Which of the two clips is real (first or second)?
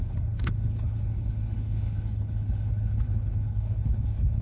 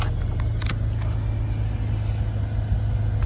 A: second